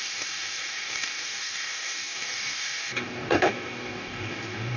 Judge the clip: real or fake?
fake